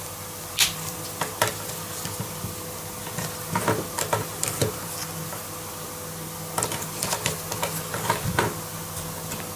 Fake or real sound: real